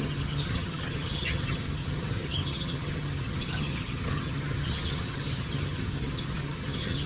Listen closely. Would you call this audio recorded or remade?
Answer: remade